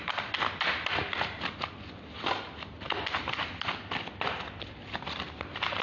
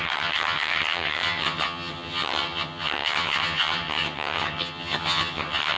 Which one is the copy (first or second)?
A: second